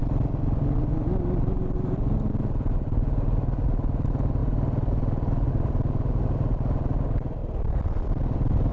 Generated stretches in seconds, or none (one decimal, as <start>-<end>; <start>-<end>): 4.4-5.5; 7.4-8.7